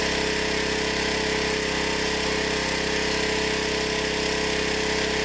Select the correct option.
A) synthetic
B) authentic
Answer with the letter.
B